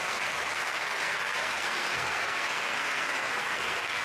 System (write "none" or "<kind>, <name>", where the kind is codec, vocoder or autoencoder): codec, SNAC